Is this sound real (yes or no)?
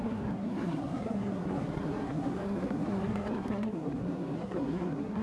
no